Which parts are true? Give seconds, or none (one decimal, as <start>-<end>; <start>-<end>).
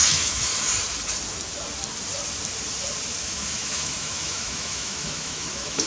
0.5-3.2